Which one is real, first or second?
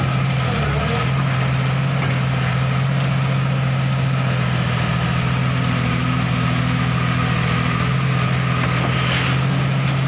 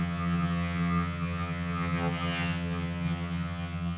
first